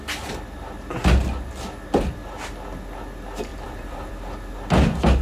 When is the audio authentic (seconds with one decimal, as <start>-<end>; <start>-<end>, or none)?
0.0-3.5; 4.1-5.2